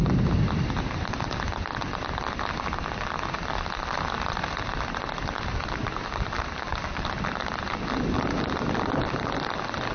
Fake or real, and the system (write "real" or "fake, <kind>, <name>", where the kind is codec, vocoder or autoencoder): fake, vocoder, BigVGAN v2